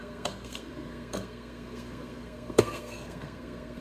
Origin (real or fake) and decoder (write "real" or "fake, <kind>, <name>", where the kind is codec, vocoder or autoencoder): fake, codec, SNAC